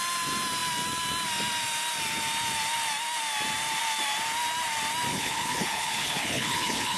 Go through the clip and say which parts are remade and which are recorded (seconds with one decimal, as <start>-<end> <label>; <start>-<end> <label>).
0.0-5.1 recorded; 5.1-7.0 remade